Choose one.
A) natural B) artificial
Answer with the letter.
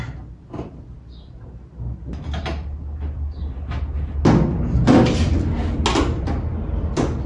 A